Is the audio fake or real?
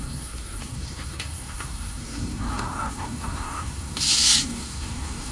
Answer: fake